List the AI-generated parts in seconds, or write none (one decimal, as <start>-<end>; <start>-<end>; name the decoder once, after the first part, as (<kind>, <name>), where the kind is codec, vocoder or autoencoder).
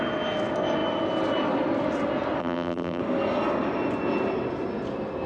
2.4-3.0 (vocoder, BigVGAN v2)